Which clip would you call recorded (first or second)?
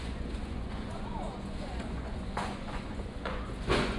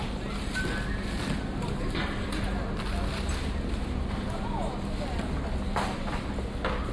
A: second